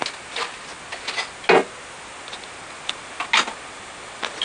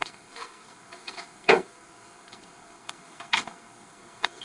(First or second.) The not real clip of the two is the second